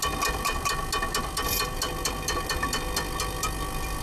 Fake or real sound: real